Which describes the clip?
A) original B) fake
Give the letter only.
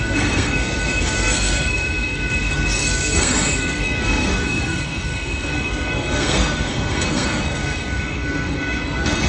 B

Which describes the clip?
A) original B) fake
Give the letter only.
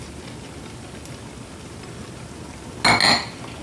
A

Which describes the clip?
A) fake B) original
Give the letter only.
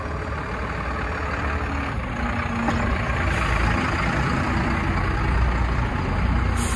B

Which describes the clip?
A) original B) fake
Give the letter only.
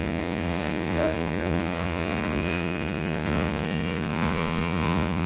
B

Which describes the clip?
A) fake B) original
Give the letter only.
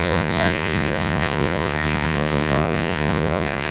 A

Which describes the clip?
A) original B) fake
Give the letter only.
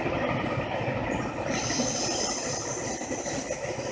A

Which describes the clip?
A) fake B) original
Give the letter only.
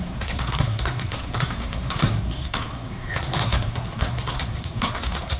A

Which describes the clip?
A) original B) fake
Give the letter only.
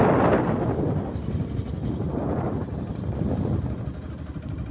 A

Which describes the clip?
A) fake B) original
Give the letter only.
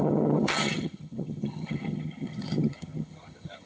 A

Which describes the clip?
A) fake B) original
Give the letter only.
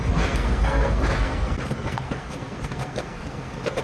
A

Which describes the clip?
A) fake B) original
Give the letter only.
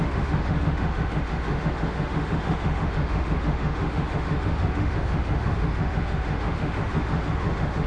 A